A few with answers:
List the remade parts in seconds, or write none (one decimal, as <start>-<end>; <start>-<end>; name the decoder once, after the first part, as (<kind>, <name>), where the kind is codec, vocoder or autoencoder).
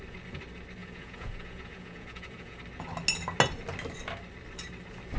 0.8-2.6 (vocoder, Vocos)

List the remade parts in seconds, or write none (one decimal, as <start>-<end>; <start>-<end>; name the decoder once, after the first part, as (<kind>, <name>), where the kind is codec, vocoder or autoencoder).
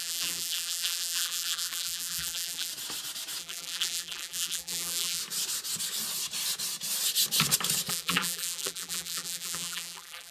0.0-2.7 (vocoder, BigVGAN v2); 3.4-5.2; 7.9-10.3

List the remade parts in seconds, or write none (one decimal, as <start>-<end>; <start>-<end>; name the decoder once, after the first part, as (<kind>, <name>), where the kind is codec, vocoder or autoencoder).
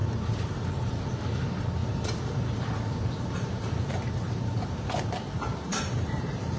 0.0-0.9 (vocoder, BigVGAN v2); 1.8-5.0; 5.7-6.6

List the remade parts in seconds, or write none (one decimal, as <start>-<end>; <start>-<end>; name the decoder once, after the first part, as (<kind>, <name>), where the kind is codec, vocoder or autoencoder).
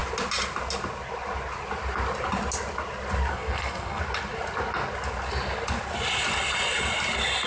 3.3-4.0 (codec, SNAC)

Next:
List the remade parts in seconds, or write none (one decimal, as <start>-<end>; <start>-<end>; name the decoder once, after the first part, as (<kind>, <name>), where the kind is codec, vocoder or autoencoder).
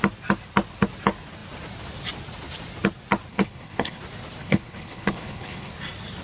3.3-4.0 (codec, HILCodec); 4.4-5.7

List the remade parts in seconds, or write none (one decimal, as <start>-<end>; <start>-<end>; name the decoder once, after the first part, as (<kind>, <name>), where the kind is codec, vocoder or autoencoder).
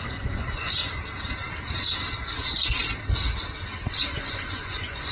0.0-0.8 (vocoder, Vocos); 3.9-5.1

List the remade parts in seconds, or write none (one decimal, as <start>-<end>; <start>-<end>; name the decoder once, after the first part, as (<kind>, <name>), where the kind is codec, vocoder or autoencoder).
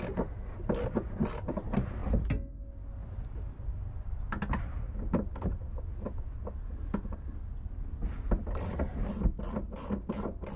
none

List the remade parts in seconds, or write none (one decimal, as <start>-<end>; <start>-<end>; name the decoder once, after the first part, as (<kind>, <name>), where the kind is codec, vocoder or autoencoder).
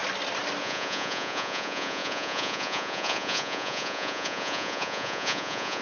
0.6-5.8 (vocoder, Vocos)